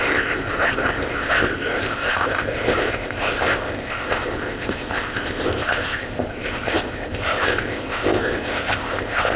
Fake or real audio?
fake